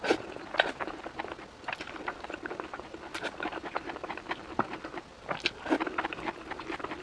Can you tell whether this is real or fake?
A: real